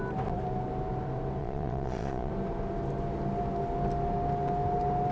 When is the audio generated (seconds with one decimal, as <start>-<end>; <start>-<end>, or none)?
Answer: 1.4-2.3